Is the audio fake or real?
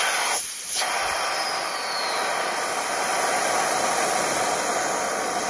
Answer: real